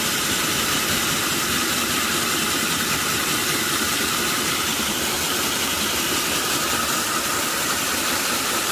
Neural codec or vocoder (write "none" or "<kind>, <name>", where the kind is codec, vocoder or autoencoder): vocoder, BigVGAN v2